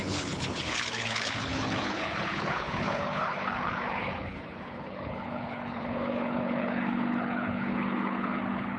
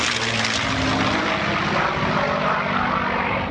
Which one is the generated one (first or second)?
first